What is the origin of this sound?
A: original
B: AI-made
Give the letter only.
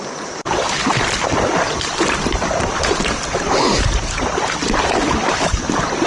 A